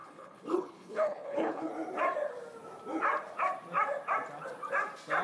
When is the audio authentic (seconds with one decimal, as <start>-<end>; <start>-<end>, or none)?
1.7-5.2